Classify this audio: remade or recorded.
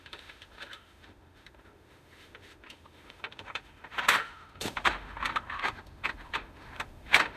remade